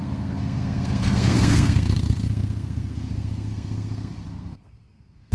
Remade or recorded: remade